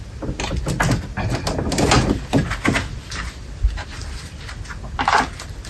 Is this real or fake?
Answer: real